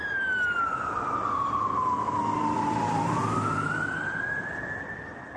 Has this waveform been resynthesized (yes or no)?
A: yes